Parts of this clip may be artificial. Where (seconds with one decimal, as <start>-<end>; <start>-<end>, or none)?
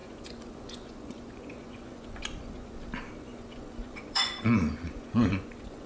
0.0-2.8; 3.2-5.9